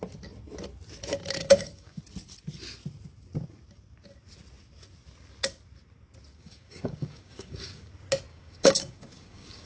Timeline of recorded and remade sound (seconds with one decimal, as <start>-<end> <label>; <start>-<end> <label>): 0.0-1.4 recorded; 1.4-2.0 remade; 2.0-6.3 recorded; 6.3-7.9 remade; 7.9-8.3 recorded; 8.3-9.7 remade